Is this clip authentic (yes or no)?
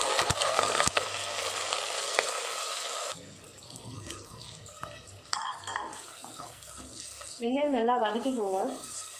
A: no